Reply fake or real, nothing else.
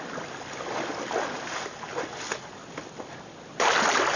real